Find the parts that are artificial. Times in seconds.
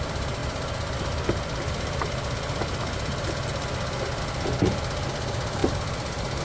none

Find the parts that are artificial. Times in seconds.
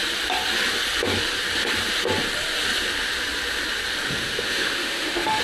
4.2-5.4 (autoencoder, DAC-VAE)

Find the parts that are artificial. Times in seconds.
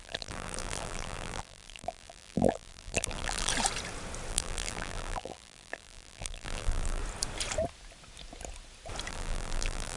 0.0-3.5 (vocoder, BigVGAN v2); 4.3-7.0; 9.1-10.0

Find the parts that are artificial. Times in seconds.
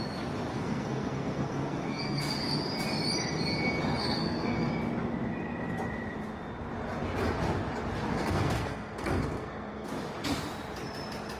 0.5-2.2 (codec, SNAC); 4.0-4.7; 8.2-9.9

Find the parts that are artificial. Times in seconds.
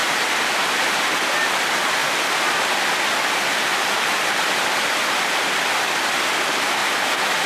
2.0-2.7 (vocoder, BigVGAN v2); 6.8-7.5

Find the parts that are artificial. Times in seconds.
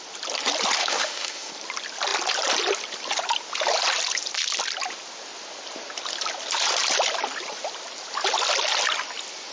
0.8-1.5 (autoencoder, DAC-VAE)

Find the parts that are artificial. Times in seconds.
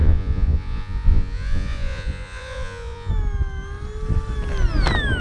0.0-3.1 (vocoder, Vocos)